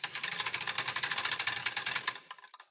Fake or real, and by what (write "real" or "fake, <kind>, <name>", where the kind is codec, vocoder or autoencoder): real